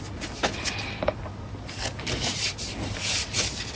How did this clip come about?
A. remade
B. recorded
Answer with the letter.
B